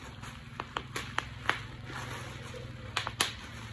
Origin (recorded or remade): recorded